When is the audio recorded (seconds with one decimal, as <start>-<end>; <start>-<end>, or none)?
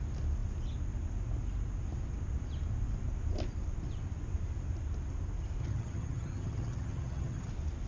0.0-5.6; 7.5-7.9